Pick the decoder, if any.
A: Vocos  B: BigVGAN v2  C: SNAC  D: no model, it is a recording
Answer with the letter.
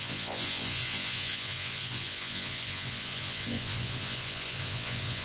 A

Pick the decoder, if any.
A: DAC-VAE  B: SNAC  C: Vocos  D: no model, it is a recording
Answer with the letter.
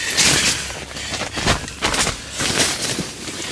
D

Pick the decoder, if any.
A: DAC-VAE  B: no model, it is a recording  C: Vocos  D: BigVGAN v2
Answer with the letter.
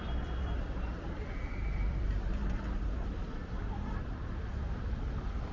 D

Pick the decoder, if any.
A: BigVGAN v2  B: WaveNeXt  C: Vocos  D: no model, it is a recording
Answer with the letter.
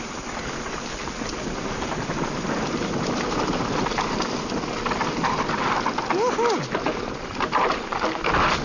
D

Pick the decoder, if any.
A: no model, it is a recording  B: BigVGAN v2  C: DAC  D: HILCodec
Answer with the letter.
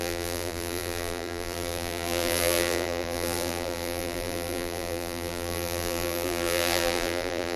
B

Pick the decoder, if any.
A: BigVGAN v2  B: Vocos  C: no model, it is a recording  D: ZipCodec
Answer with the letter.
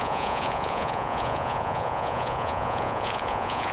B